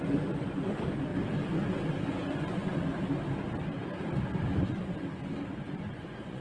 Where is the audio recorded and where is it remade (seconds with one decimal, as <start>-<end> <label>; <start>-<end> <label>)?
0.0-1.1 remade; 1.1-2.0 recorded; 2.0-2.9 remade; 2.9-5.6 recorded; 5.6-6.4 remade